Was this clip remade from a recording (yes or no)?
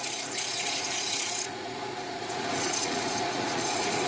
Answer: yes